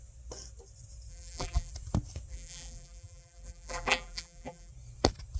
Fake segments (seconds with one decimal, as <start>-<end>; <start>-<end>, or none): 1.1-1.7; 2.3-4.7